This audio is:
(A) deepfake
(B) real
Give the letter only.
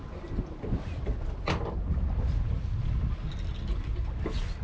B